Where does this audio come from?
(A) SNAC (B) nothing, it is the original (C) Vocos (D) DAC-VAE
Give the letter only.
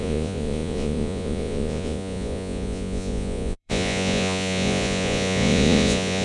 C